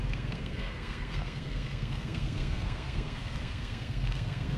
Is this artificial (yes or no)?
yes